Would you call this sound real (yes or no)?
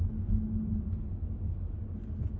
yes